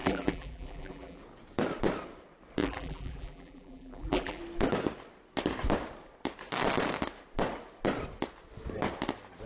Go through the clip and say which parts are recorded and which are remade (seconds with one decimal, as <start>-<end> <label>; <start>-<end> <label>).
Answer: 0.0-1.2 remade; 1.2-2.6 recorded; 2.6-4.4 remade; 4.4-9.5 recorded